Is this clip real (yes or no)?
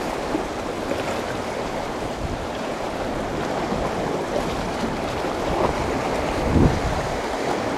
yes